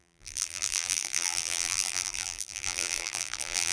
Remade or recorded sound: remade